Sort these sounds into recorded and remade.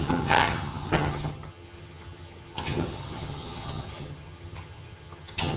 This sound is remade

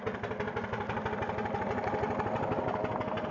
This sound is recorded